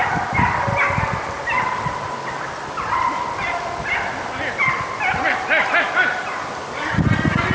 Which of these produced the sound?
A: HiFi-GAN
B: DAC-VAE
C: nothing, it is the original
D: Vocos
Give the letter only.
C